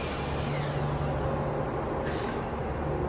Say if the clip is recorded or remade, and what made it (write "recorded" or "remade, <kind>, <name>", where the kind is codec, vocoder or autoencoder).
recorded